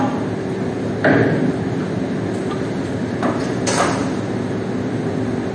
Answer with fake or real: real